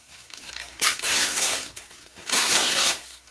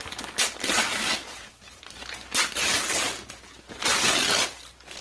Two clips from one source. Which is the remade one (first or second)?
first